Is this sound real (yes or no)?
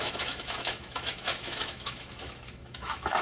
no